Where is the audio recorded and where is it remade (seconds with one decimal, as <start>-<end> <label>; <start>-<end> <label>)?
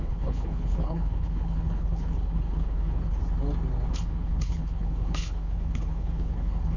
0.0-3.2 remade; 3.2-3.9 recorded; 3.9-6.8 remade